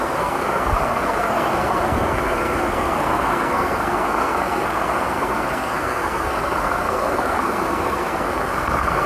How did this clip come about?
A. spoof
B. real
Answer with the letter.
A